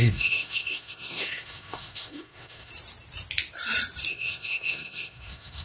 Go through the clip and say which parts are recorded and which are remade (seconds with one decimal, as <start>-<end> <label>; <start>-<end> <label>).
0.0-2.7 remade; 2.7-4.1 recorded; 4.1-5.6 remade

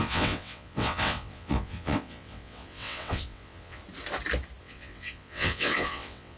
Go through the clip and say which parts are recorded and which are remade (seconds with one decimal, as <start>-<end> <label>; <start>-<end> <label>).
0.0-3.8 remade; 3.8-4.6 recorded; 4.6-6.4 remade

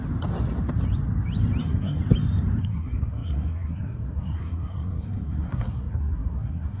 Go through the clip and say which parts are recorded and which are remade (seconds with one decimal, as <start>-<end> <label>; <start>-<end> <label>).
0.0-1.6 recorded; 1.6-2.0 remade; 2.0-2.6 recorded; 2.6-6.8 remade

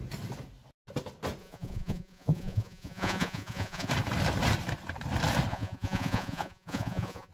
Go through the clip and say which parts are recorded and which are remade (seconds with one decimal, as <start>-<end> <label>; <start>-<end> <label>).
0.0-1.4 recorded; 1.4-3.9 remade; 3.9-5.5 recorded; 5.5-7.3 remade

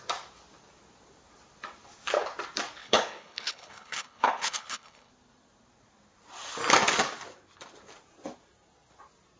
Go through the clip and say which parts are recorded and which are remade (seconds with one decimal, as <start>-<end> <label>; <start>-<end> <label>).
0.0-2.8 recorded; 2.8-5.1 remade; 5.1-9.4 recorded

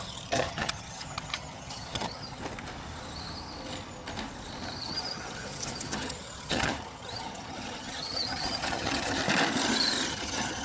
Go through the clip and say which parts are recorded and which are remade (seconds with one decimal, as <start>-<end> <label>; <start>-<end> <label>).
0.0-2.4 remade; 2.4-4.8 recorded; 4.8-9.2 remade; 9.2-10.1 recorded; 10.1-10.6 remade

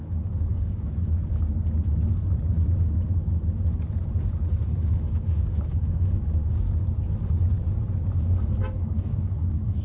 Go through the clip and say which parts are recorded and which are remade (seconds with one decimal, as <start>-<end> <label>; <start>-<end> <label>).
0.0-1.2 remade; 1.2-4.8 recorded; 4.8-6.4 remade; 6.4-8.2 recorded; 8.2-9.8 remade

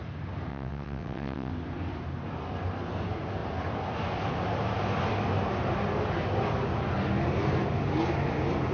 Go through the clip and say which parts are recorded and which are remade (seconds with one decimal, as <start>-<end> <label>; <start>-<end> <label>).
0.0-0.5 recorded; 0.5-1.5 remade; 1.5-8.7 recorded